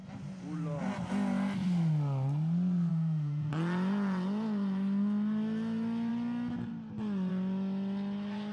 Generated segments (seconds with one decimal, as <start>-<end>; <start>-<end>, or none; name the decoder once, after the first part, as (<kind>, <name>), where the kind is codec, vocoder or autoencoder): 2.9-3.5 (autoencoder, DAC-VAE)